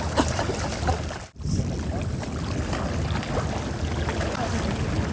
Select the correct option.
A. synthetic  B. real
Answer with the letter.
B